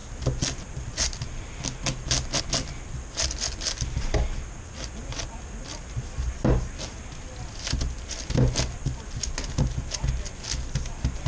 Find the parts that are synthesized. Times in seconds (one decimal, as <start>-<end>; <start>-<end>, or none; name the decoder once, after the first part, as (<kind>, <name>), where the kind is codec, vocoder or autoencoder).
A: none